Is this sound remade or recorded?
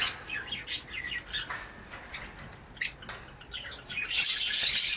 recorded